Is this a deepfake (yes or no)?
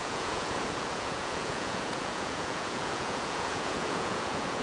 yes